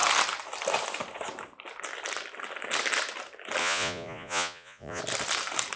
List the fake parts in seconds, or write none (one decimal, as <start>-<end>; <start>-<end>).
3.6-5.0